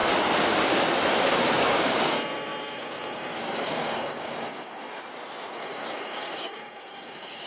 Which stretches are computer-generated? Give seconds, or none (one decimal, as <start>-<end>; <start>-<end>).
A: 1.6-5.0; 5.5-7.5